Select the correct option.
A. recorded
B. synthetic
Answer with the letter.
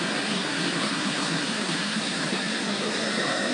B